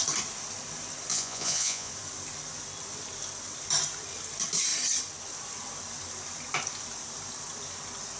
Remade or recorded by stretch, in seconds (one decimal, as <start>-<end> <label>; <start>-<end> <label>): 0.0-1.1 recorded; 1.1-1.9 remade; 1.9-8.2 recorded